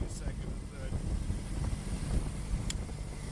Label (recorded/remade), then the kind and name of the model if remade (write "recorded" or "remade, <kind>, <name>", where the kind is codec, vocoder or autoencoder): recorded